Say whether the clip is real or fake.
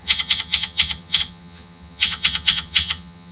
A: fake